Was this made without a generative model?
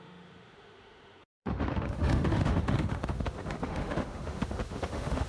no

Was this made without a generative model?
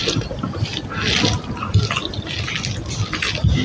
yes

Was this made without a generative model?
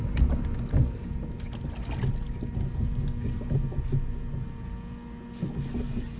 yes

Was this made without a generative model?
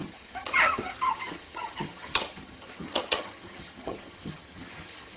no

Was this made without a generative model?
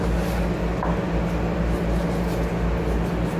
yes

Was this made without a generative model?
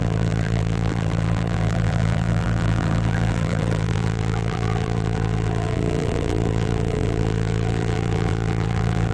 no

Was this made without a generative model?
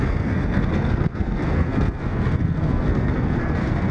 no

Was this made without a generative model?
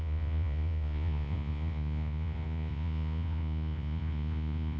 no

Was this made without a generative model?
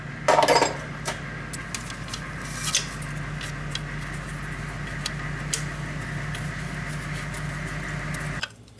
yes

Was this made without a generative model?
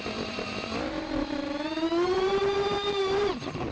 no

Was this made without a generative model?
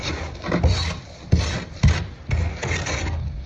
yes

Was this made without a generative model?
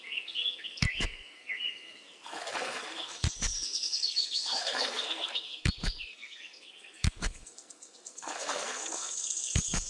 no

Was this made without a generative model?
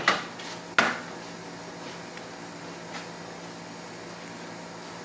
yes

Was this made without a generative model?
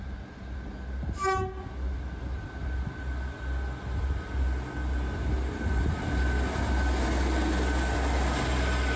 yes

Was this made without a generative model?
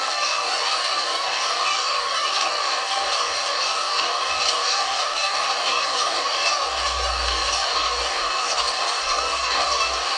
no